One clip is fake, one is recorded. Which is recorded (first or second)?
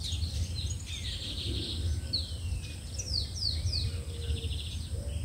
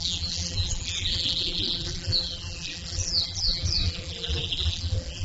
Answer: first